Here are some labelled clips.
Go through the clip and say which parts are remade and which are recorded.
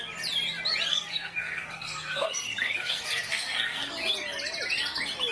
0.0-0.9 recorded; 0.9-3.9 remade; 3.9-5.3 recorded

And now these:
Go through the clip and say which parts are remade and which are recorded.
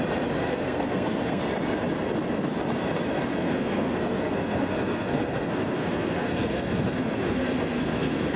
0.0-0.4 recorded; 0.4-1.4 remade; 1.4-3.4 recorded; 3.4-8.4 remade